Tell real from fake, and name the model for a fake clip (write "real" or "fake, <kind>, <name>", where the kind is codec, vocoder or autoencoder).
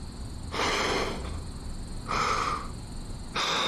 real